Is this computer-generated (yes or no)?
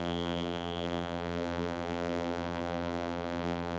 yes